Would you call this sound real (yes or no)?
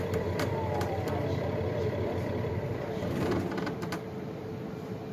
no